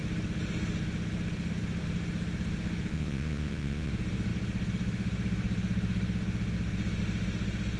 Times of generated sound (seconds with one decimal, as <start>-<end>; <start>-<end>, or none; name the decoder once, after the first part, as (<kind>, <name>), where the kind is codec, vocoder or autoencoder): 2.9-3.9 (vocoder, Vocos)